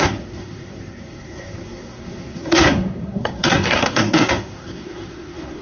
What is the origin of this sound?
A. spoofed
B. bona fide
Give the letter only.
A